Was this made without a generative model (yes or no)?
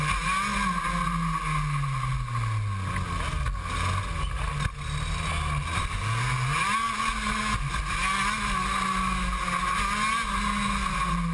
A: yes